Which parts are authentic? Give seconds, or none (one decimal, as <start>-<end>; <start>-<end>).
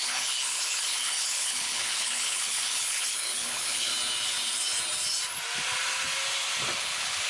3.9-6.8